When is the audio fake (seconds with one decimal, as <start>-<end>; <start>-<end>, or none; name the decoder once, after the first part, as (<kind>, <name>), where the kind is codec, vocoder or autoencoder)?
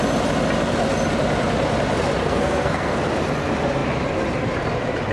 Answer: 2.2-3.0 (codec, SNAC)